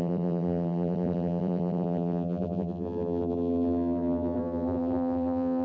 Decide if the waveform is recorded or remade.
remade